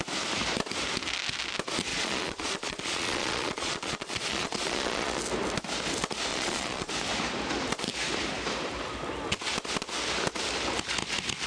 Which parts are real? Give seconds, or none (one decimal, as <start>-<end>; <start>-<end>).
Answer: 0.0-1.9; 5.2-6.3; 6.9-11.5